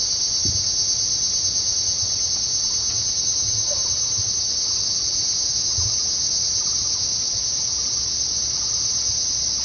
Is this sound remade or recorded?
recorded